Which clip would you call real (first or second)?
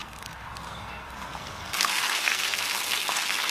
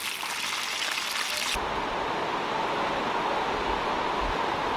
second